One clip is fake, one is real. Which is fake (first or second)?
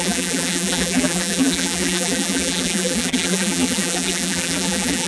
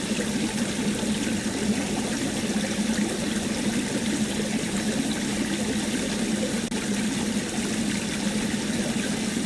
first